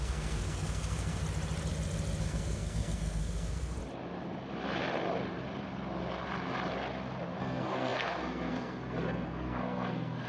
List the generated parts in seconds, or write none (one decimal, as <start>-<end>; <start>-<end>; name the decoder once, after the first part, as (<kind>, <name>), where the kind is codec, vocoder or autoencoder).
0.0-1.2 (codec, SNAC); 2.2-3.8; 7.4-10.3